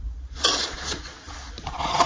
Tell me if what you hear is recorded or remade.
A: remade